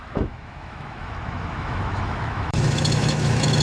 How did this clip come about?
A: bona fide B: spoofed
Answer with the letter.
B